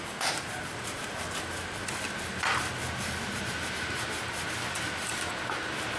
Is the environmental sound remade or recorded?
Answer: recorded